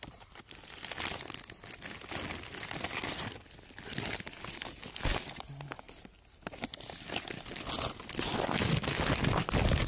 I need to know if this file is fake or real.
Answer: real